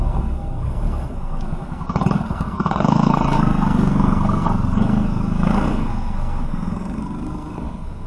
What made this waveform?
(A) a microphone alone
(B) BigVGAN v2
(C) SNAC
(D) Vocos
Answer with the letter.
C